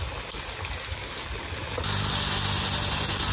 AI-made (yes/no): no